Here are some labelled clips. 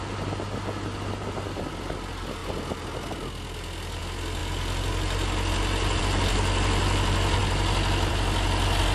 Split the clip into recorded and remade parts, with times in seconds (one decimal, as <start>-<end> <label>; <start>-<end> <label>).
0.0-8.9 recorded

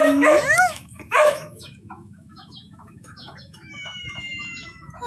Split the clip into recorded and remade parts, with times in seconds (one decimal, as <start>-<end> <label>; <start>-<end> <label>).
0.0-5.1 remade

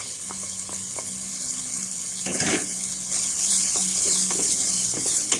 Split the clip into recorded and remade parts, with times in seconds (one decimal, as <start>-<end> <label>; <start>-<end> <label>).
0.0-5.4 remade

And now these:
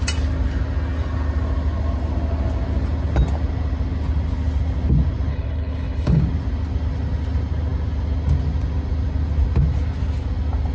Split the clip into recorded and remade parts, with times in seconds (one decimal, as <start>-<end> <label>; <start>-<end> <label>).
0.0-5.3 recorded; 5.3-6.2 remade; 6.2-10.7 recorded

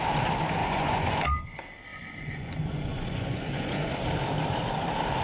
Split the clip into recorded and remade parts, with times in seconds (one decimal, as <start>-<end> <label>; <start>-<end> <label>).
0.0-0.6 recorded; 0.6-1.2 remade; 1.2-1.9 recorded; 1.9-3.9 remade; 3.9-5.2 recorded

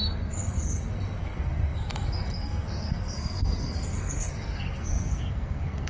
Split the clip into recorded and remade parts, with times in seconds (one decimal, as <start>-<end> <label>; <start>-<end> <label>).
0.0-5.9 remade